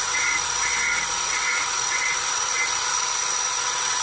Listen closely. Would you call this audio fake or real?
fake